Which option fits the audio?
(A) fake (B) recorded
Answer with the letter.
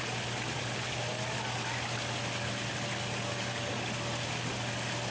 B